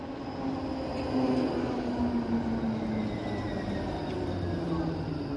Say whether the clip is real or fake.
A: real